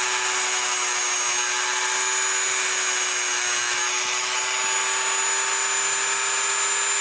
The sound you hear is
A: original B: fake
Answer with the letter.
A